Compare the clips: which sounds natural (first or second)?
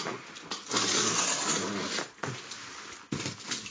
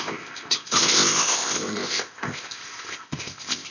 first